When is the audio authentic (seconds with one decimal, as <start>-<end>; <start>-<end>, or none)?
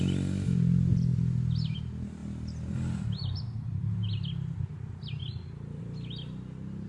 0.0-6.9